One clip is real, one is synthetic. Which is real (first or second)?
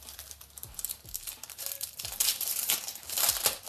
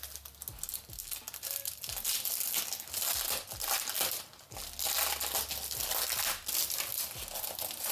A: second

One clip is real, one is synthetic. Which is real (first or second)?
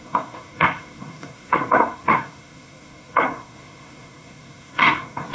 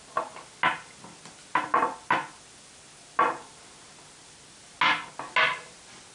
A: second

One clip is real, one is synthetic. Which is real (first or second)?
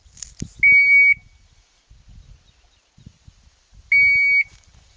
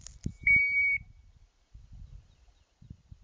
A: first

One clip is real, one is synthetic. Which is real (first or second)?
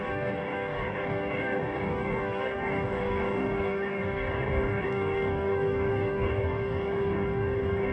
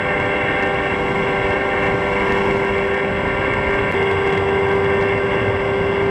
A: second